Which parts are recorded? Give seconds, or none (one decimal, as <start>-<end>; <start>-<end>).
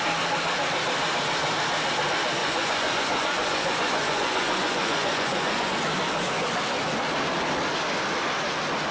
0.0-2.4; 5.7-8.9